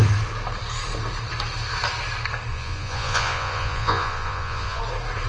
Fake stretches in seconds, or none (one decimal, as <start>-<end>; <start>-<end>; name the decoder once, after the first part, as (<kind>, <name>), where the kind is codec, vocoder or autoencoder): 2.5-4.8 (vocoder, Vocos)